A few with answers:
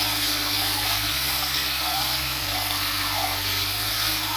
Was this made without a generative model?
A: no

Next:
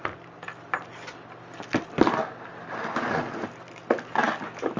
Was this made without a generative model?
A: yes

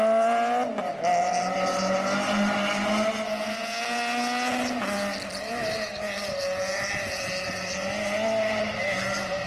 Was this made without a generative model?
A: yes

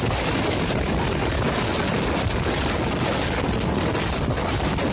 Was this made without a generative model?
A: yes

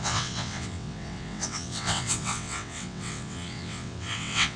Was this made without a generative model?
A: no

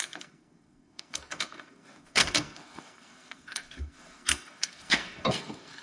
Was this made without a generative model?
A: no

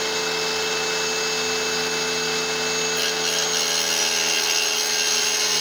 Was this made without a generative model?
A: yes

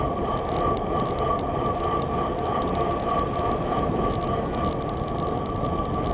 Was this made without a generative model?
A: yes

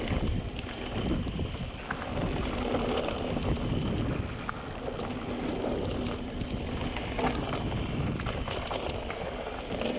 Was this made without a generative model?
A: yes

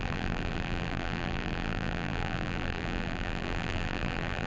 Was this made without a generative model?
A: no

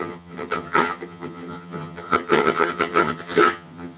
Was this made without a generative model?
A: no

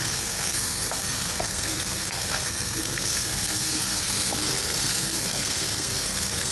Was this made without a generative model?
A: no